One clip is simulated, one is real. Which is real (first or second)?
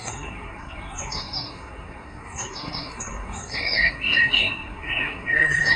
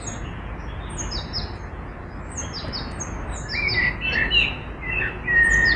second